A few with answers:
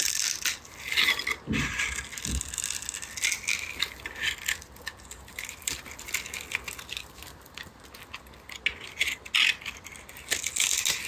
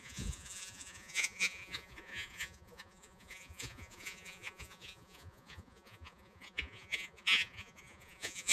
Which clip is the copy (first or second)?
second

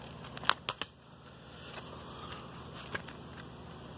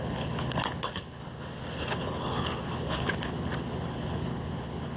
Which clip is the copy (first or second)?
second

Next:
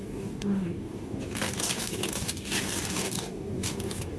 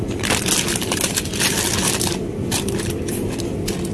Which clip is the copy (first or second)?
first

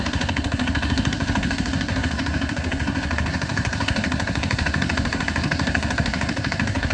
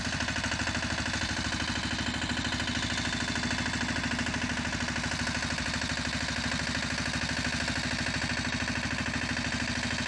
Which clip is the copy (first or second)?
first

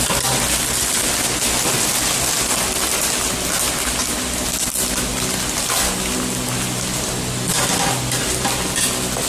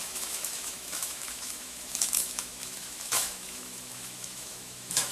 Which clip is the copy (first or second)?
second